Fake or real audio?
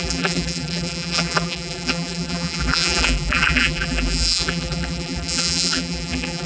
fake